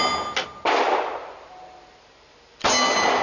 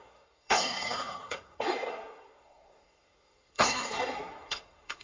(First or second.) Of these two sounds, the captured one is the first